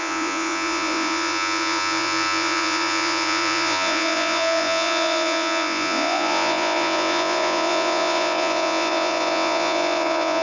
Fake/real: fake